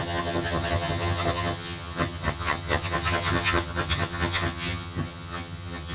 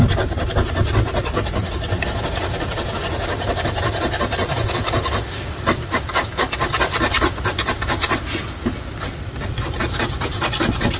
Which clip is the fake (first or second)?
first